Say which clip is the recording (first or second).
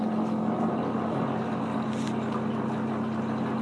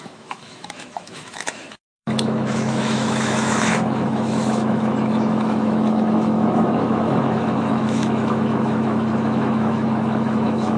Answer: first